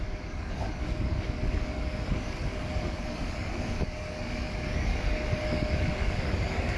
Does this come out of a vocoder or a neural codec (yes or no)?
yes